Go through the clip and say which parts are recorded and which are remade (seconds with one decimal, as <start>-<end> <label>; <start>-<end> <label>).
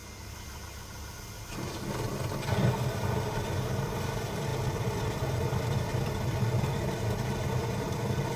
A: 0.0-3.0 recorded; 3.0-8.4 remade